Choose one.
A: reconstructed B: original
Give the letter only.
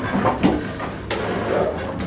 B